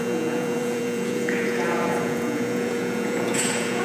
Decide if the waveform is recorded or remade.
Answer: remade